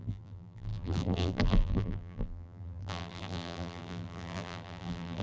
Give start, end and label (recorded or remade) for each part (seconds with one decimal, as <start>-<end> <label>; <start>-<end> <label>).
0.0-5.2 remade